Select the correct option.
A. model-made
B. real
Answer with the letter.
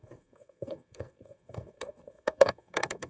A